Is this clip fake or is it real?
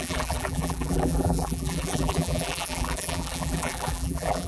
fake